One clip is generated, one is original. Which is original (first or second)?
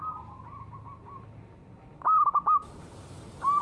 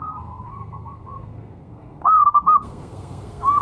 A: first